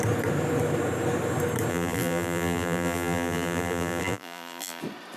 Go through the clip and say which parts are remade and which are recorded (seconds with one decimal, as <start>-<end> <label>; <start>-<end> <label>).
0.0-1.7 recorded; 1.7-4.8 remade; 4.8-5.2 recorded